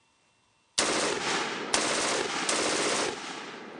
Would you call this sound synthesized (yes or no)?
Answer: no